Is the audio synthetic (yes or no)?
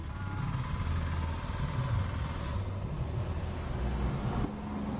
no